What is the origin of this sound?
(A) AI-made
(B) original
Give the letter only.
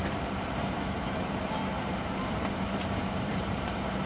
A